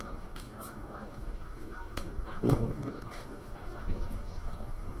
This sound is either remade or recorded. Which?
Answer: remade